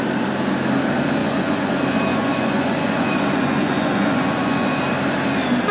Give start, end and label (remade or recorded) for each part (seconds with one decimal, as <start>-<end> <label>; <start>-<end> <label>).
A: 0.0-1.2 recorded; 1.2-1.7 remade; 1.7-2.1 recorded; 2.1-4.8 remade; 4.8-5.7 recorded